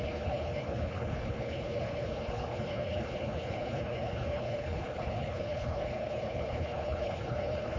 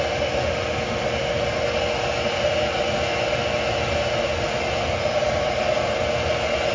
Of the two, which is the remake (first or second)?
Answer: first